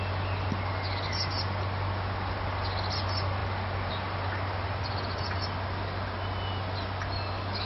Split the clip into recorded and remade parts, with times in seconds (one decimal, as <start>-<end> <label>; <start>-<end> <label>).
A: 0.0-7.7 recorded